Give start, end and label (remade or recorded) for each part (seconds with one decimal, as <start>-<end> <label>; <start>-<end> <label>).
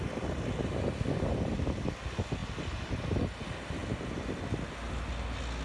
0.0-5.6 recorded